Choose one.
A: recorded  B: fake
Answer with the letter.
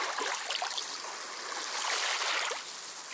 A